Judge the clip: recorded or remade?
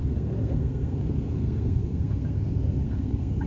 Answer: remade